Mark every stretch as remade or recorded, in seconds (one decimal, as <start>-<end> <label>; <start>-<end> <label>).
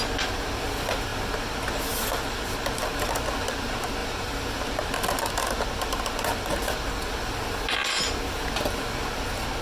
0.0-4.0 recorded; 4.0-4.7 remade; 4.7-9.6 recorded